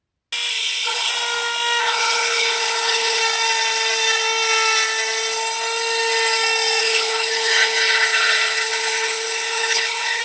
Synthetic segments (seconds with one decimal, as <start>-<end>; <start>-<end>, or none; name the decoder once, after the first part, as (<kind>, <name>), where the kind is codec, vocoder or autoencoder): 0.5-1.1 (codec, HILCodec); 1.8-3.2; 6.8-10.2